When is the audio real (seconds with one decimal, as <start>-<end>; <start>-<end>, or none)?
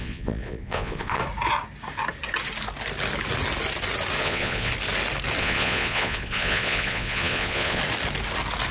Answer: 1.2-4.2; 4.7-5.4; 7.8-8.7